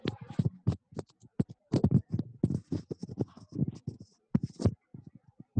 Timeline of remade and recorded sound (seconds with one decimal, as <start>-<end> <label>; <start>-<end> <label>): 0.0-5.6 recorded